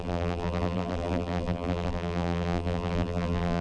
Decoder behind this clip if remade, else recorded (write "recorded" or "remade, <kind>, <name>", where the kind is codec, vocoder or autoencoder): remade, vocoder, BigVGAN v2